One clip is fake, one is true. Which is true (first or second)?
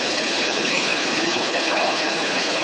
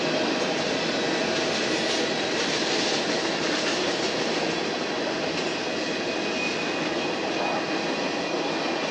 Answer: second